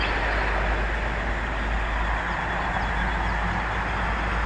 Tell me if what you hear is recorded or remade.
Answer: recorded